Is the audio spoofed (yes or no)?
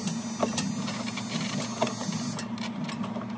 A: no